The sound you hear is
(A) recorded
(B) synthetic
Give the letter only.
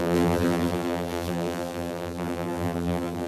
B